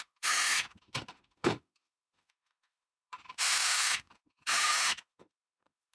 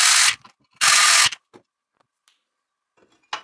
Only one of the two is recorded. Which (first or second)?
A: second